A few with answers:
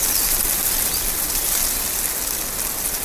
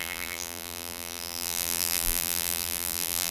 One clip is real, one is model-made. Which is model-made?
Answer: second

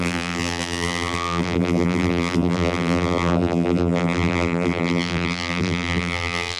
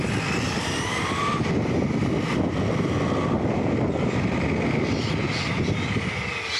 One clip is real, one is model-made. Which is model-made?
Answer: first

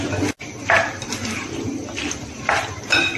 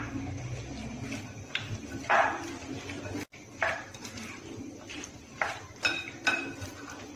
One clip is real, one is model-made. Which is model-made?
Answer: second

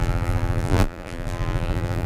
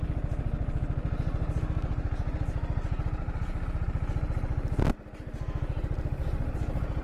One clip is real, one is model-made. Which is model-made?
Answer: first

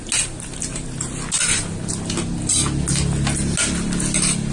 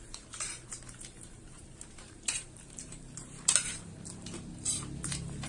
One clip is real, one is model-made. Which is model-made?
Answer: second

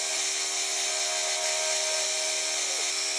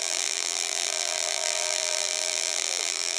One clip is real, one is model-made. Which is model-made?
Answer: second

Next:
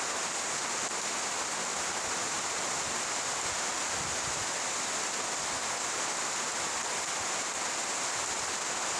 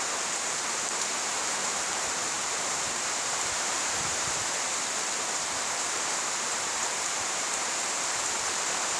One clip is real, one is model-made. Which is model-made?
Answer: second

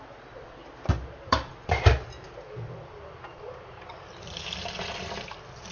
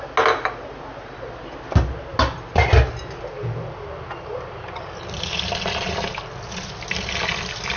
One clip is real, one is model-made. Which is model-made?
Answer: first